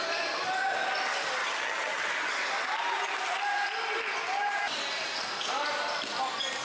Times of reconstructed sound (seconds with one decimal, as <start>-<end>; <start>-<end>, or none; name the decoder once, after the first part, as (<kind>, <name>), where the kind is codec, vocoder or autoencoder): 1.4-2.0 (vocoder, HiFi-GAN)